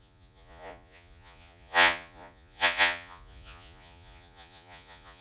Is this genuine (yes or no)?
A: no